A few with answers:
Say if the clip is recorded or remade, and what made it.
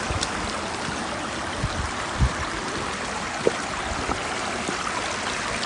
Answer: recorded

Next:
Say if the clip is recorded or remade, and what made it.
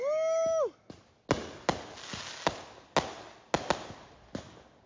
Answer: recorded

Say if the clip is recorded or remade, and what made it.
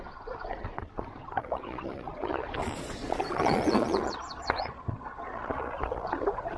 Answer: remade, vocoder, Vocos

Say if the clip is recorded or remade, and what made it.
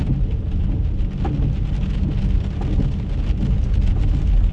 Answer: recorded